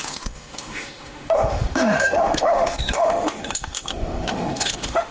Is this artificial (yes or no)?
yes